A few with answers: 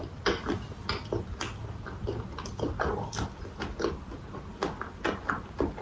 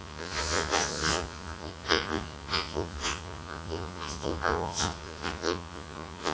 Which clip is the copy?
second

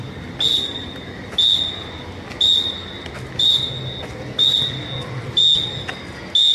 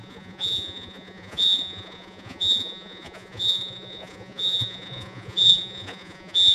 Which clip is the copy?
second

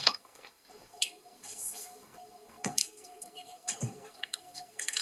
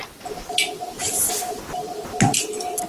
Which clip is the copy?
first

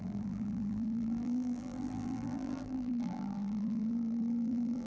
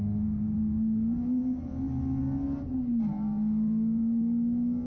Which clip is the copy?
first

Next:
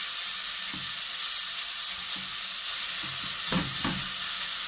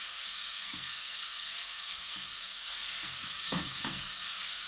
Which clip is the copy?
second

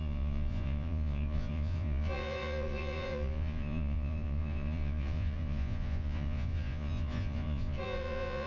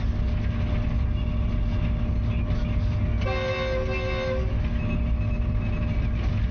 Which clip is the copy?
first